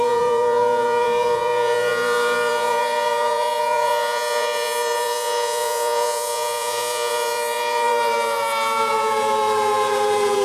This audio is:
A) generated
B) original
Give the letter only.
A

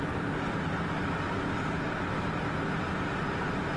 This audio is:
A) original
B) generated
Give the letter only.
A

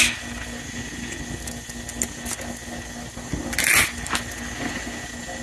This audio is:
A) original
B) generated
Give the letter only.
A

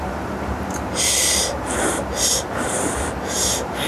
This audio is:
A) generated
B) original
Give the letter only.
A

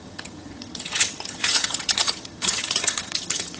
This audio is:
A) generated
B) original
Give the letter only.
A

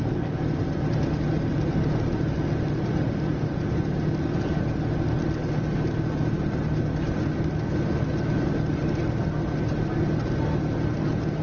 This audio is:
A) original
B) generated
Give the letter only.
A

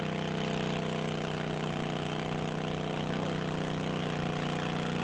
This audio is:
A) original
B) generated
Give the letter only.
A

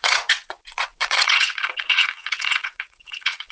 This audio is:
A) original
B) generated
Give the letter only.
B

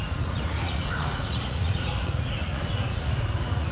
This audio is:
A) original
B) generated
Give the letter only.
B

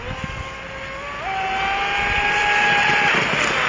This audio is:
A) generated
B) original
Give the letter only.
B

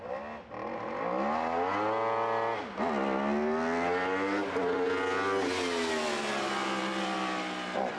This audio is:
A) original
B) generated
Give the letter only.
A